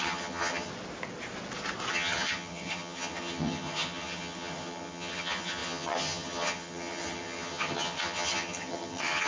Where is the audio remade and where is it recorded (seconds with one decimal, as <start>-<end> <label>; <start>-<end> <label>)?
0.0-0.7 remade; 0.7-1.9 recorded; 1.9-9.3 remade